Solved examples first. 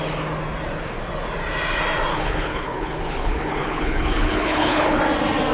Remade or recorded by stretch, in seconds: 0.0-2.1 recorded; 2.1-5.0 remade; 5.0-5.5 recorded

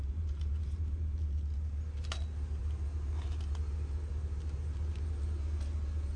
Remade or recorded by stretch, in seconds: 0.0-0.8 remade; 0.8-6.2 recorded

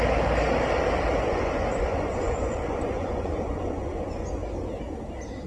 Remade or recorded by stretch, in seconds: 0.0-1.3 recorded; 1.3-4.4 remade; 4.4-5.5 recorded

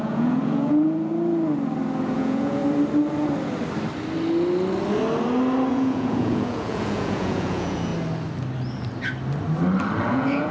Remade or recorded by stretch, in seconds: 0.0-1.1 remade; 1.1-2.1 recorded; 2.1-2.6 remade; 2.6-5.7 recorded; 5.7-7.9 remade; 7.9-10.1 recorded; 10.1-10.5 remade

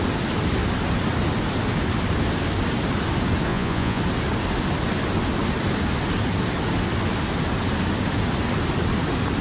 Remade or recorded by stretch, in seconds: 0.0-3.5 recorded; 3.5-4.0 remade; 4.0-9.4 recorded

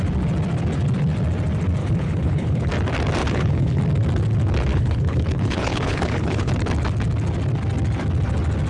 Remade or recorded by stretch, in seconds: 0.0-1.8 recorded; 1.8-2.7 remade; 2.7-3.2 recorded; 3.2-3.8 remade; 3.8-4.7 recorded; 4.7-6.5 remade; 6.5-8.7 recorded

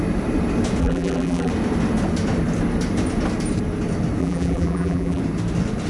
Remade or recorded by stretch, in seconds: 0.0-0.8 recorded; 0.8-1.5 remade; 1.5-4.2 recorded; 4.2-5.2 remade; 5.2-5.9 recorded